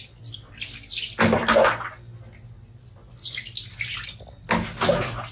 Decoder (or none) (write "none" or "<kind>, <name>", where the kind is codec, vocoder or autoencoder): none